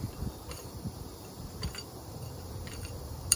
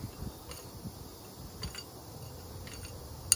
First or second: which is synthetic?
first